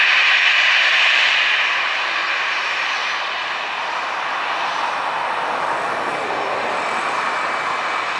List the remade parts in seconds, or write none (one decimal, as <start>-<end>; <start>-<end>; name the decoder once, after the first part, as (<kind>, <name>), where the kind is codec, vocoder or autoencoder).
none